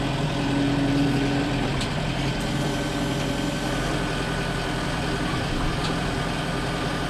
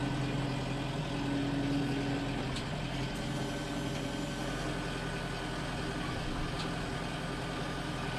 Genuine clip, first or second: second